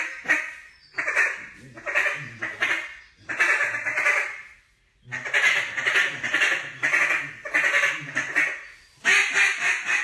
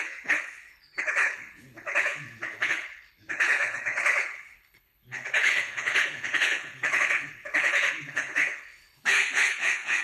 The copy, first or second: second